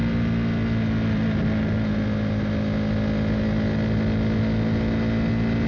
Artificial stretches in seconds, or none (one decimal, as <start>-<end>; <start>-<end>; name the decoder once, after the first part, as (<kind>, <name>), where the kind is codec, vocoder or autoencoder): none